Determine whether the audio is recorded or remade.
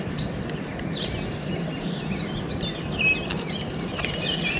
recorded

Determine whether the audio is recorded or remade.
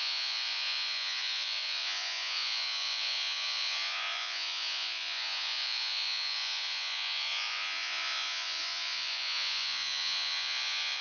remade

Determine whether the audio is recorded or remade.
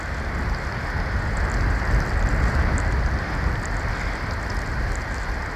recorded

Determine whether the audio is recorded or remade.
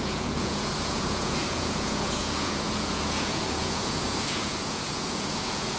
remade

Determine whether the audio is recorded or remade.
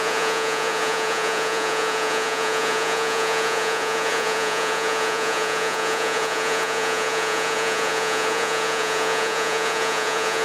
remade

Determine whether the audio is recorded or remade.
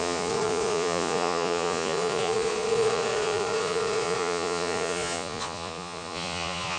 remade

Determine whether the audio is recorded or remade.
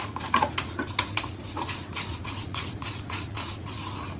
remade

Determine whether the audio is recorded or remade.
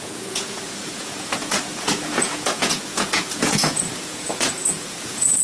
remade